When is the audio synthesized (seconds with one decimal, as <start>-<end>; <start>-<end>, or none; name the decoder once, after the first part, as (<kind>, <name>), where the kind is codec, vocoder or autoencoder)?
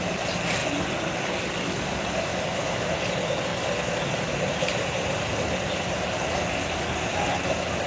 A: none